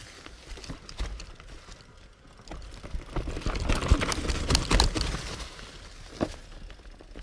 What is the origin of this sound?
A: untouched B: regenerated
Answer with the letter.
A